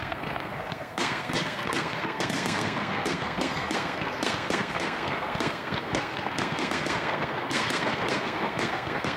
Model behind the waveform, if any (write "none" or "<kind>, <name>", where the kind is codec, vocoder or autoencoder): codec, SNAC